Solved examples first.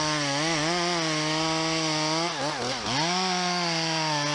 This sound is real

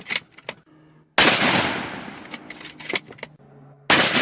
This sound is real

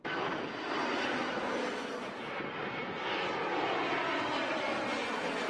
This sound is real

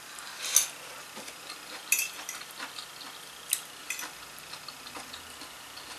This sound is real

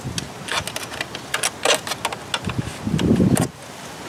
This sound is real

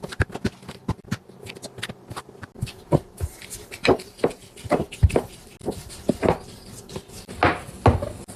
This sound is real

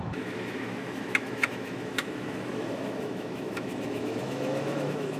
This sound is fake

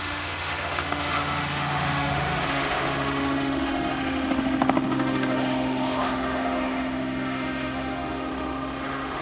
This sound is fake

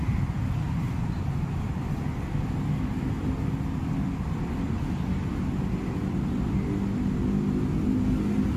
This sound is real